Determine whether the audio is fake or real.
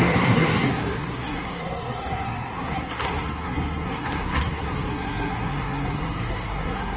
fake